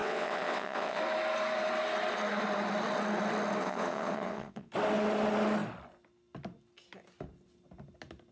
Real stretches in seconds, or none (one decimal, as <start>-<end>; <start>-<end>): 1.0-3.6; 4.7-8.3